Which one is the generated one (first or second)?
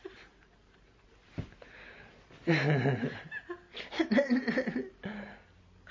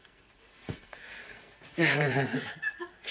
second